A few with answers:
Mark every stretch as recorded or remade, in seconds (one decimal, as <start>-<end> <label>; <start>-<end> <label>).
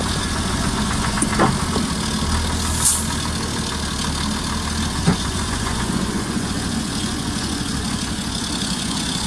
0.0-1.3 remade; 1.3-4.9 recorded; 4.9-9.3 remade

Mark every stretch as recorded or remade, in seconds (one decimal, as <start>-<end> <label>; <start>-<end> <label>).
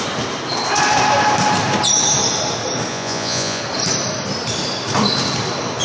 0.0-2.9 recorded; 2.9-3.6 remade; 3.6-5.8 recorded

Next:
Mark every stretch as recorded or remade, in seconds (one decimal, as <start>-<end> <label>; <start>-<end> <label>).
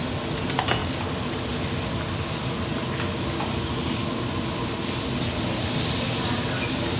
0.0-7.0 recorded